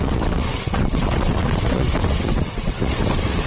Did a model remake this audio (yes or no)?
yes